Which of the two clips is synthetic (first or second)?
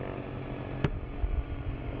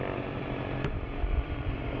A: second